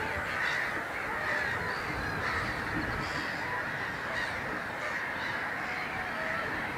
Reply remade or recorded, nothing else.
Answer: recorded